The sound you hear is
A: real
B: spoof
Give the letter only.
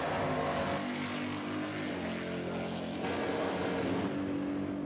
A